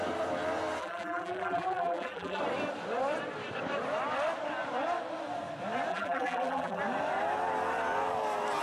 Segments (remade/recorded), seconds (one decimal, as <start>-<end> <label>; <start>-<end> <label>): 0.0-0.8 recorded; 0.8-2.4 remade; 2.4-5.9 recorded; 5.9-6.8 remade; 6.8-8.6 recorded